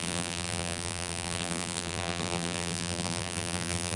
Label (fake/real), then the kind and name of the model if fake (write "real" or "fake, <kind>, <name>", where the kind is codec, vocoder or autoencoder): fake, vocoder, BigVGAN v2